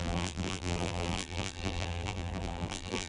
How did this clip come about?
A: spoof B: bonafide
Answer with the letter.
A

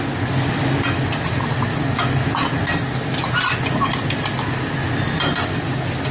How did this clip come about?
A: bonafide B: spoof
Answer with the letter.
A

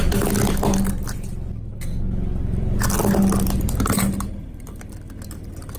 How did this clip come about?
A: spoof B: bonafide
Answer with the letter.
B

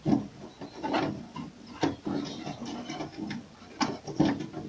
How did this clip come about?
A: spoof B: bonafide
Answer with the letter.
B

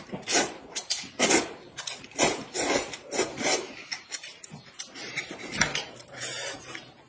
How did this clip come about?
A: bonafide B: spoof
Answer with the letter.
B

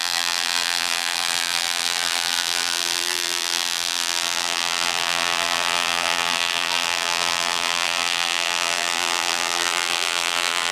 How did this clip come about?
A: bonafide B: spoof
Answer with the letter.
B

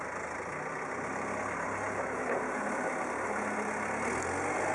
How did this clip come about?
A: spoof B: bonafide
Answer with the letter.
B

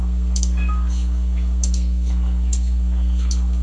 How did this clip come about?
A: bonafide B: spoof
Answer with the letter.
B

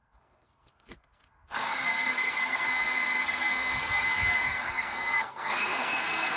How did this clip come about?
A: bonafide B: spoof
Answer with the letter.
B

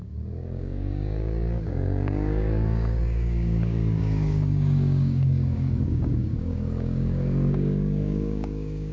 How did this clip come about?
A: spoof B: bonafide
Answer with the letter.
A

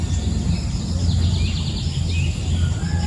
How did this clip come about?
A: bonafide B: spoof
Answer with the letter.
A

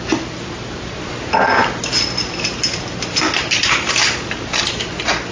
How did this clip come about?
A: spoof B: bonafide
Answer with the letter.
B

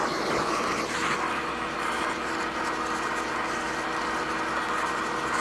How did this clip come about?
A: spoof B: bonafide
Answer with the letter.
B